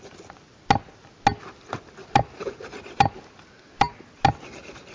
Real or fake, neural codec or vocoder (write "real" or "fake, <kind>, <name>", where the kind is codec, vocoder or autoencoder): real